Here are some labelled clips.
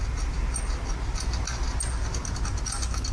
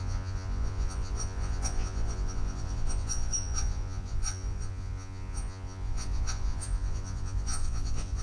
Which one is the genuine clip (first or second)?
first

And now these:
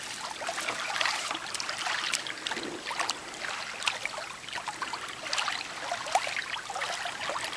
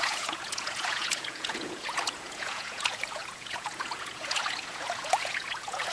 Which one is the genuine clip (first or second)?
first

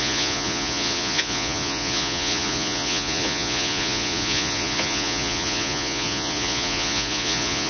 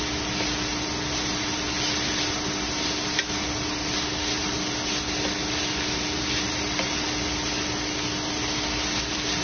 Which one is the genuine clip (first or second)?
second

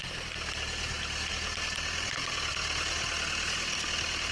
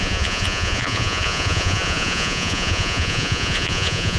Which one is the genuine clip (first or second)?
first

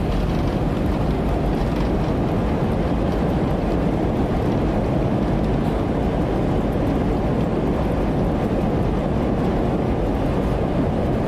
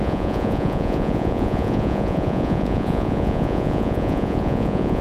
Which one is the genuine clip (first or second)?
first